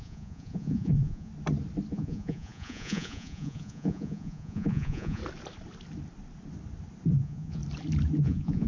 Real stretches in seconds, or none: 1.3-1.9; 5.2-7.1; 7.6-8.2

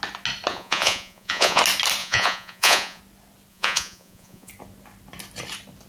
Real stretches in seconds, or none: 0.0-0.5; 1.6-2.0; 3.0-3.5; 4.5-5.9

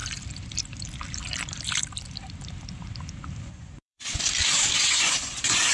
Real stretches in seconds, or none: 0.0-3.4; 4.1-4.7